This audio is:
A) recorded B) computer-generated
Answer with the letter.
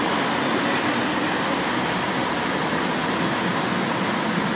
A